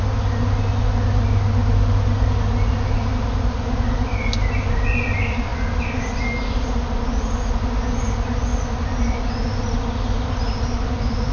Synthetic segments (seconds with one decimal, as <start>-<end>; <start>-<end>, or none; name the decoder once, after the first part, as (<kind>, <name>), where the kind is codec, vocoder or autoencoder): none